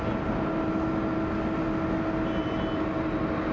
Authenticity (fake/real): real